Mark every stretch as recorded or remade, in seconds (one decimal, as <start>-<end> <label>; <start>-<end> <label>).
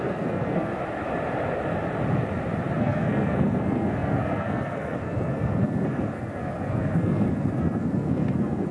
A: 0.0-0.7 remade; 0.7-2.8 recorded; 2.8-8.7 remade